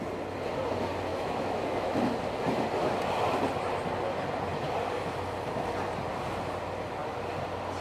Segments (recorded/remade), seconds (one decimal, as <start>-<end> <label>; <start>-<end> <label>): 0.0-1.1 recorded; 1.1-2.0 remade; 2.0-7.8 recorded